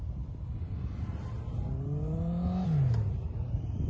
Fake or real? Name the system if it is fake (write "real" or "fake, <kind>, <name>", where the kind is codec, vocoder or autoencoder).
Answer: real